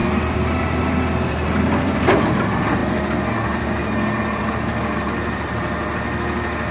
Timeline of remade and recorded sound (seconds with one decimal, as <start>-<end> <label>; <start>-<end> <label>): 0.0-2.8 remade; 2.8-4.4 recorded; 4.4-6.7 remade